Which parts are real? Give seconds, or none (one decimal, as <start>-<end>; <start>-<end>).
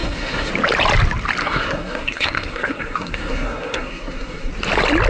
0.5-1.4; 4.5-5.1